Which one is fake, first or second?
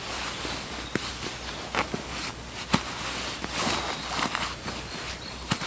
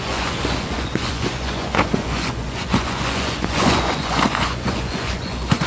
second